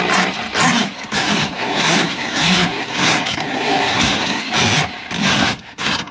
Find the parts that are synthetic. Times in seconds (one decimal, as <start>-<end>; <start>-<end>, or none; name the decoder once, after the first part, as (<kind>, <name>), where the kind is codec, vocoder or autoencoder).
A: 0.8-4.5 (codec, SNAC); 5.2-6.1